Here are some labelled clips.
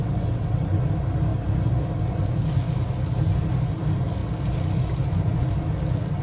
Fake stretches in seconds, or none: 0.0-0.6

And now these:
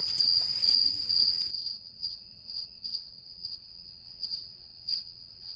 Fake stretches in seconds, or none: 0.0-5.6